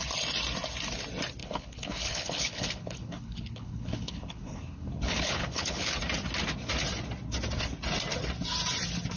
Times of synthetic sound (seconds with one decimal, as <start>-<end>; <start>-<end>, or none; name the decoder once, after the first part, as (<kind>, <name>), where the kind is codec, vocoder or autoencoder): 1.4-5.9 (codec, HILCodec)